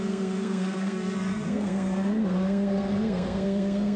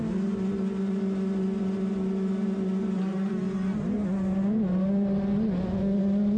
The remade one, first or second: first